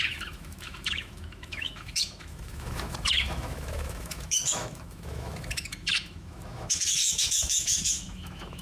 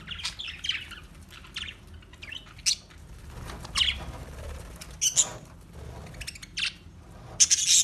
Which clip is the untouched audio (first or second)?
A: second